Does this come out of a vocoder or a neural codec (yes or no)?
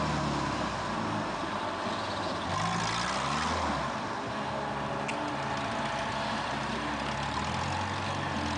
no